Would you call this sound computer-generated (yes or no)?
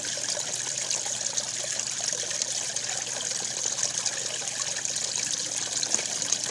no